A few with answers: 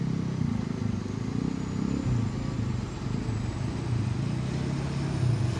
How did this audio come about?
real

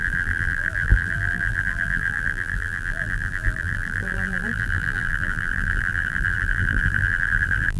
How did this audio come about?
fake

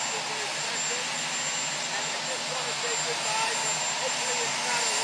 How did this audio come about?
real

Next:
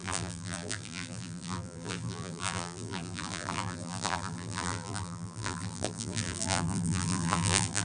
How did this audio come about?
fake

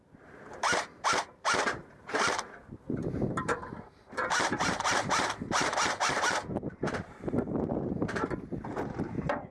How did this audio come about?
fake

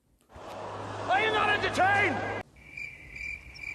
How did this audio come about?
real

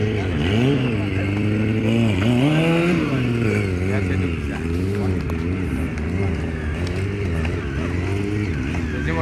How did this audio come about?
real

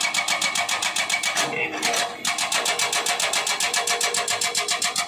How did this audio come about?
real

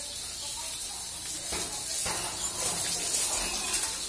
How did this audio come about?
real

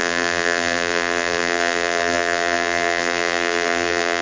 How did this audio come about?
fake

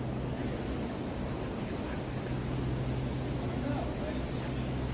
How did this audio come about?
real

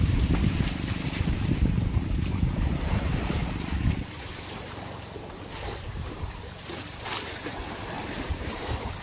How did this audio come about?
fake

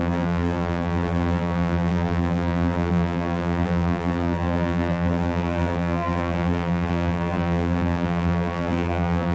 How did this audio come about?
fake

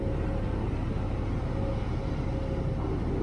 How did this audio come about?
real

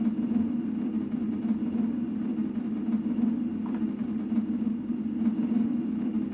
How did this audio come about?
real